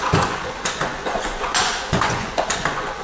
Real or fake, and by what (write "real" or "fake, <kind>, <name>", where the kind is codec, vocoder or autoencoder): fake, vocoder, Vocos